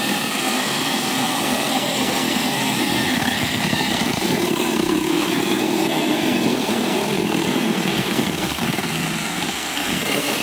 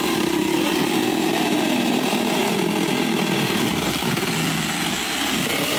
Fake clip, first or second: first